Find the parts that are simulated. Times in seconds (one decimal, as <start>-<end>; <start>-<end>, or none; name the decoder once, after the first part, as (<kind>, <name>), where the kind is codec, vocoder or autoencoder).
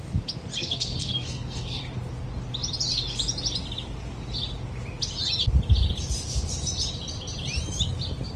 0.6-1.8 (codec, SNAC)